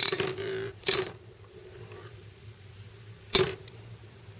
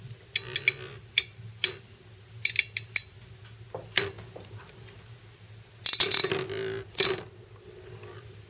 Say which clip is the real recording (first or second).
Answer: second